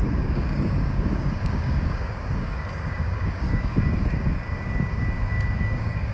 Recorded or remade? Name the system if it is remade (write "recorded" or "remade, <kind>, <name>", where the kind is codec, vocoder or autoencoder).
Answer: remade, codec, DAC